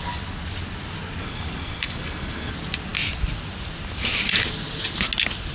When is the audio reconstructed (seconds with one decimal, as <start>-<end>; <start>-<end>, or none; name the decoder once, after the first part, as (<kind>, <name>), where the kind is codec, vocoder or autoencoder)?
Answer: 1.2-2.5 (codec, SNAC)